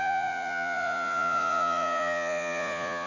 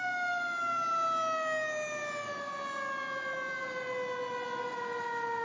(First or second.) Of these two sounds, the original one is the second